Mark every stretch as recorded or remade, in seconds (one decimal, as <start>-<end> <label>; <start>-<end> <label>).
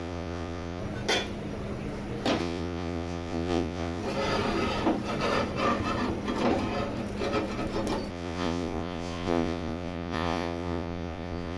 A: 0.0-0.8 remade; 0.8-2.4 recorded; 2.4-4.0 remade; 4.0-8.1 recorded; 8.1-11.6 remade